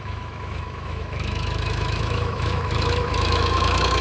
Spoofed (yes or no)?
yes